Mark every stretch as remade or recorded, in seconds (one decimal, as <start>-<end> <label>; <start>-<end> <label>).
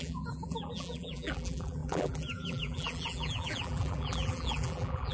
0.0-5.1 remade